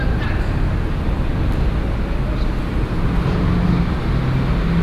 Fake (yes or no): no